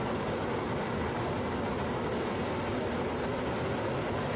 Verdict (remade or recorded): recorded